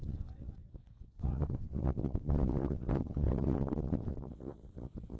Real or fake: fake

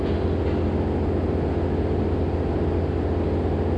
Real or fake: real